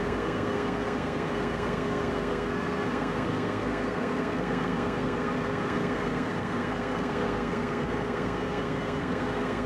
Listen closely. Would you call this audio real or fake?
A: fake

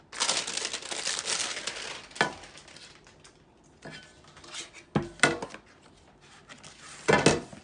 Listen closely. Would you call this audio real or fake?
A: real